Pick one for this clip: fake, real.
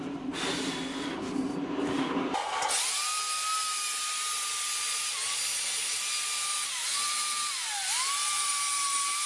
real